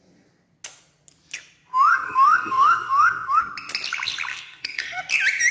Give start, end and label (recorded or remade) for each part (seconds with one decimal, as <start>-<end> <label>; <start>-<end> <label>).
0.0-1.9 recorded; 1.9-3.4 remade; 3.4-4.3 recorded; 4.3-5.0 remade; 5.0-5.5 recorded